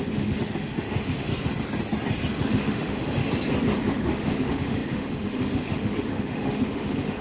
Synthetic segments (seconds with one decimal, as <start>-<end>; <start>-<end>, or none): 0.0-1.3; 2.4-3.2; 3.8-7.2